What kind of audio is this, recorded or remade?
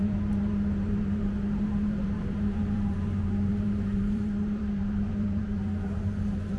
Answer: remade